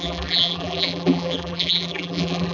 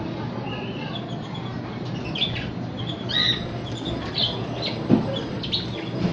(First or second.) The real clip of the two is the second